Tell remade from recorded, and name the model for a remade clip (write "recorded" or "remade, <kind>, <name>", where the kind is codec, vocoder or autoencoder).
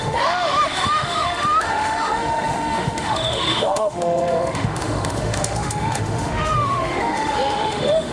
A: remade, autoencoder, DAC-VAE